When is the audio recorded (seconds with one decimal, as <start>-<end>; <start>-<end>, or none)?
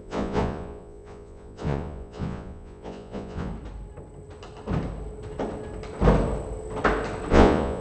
3.5-7.3